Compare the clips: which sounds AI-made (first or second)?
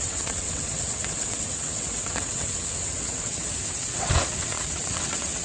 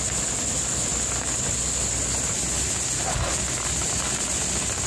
first